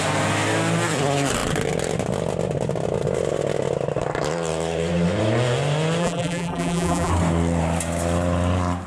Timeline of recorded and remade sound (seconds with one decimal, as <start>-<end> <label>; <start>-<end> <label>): 0.0-6.0 recorded; 6.0-7.1 remade; 7.1-8.9 recorded